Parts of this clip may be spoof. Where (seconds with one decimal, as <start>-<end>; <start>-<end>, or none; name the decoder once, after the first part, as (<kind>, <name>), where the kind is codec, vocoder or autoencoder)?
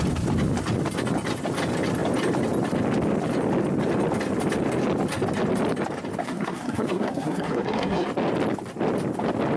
6.2-8.1 (codec, SNAC)